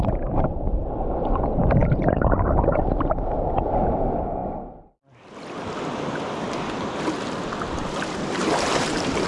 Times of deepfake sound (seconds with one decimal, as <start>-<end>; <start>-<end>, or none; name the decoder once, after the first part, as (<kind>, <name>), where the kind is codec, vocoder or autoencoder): 0.0-4.4 (vocoder, BigVGAN v2); 7.9-9.3